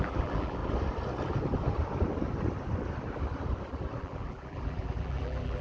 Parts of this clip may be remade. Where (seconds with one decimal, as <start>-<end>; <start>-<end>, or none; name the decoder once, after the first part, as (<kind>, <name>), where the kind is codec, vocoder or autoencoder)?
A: 0.0-0.6 (vocoder, BigVGAN v2); 4.0-5.6